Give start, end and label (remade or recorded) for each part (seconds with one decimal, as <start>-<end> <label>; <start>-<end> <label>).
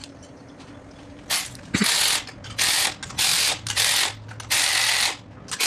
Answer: 0.0-1.9 remade; 1.9-3.3 recorded; 3.3-3.9 remade; 3.9-5.7 recorded